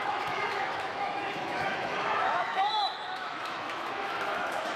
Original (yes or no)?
no